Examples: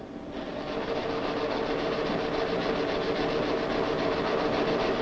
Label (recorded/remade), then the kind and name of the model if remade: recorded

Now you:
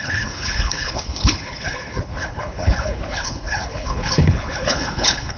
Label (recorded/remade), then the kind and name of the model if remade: remade, codec, HILCodec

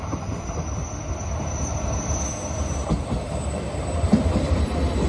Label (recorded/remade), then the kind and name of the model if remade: recorded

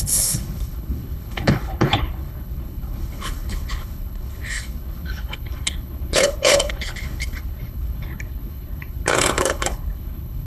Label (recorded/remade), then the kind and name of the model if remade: remade, codec, HILCodec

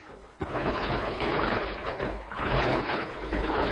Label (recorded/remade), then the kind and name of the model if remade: remade, codec, HILCodec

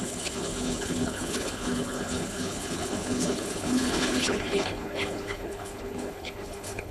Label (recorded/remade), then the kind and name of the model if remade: remade, codec, HILCodec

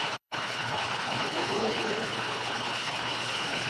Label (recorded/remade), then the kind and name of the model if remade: remade, codec, HILCodec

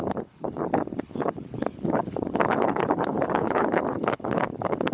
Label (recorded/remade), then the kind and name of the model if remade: remade, codec, HILCodec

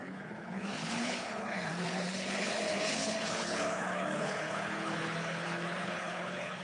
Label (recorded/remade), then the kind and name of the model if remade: remade, codec, HILCodec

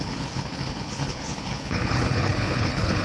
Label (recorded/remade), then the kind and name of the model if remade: remade, codec, HILCodec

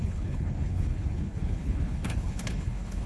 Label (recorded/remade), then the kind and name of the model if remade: remade, codec, HILCodec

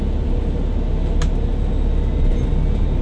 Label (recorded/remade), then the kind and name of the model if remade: recorded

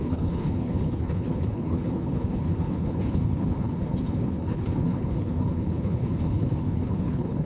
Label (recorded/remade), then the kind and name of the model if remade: remade, codec, HILCodec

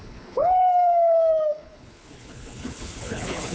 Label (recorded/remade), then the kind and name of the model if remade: remade, codec, HILCodec